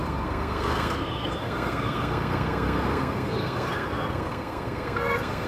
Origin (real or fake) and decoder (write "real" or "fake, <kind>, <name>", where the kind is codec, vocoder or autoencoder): fake, codec, SNAC